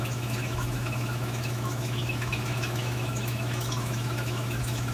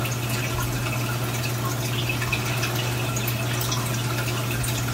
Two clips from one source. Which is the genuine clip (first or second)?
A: second